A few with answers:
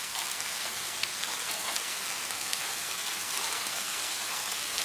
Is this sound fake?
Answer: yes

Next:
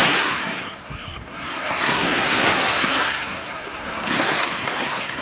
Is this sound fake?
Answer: yes